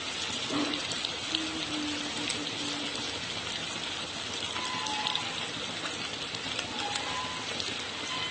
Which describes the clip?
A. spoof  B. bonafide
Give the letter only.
B